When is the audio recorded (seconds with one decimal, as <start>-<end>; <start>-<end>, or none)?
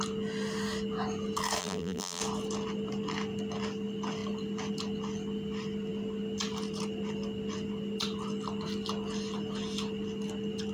0.0-1.6; 2.2-10.7